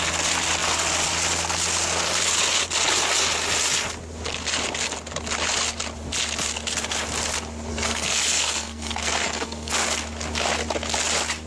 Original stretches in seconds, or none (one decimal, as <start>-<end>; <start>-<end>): 0.0-7.7; 9.7-11.5